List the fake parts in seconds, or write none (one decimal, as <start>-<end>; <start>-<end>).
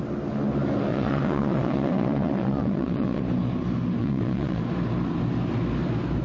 0.9-3.2; 4.0-4.6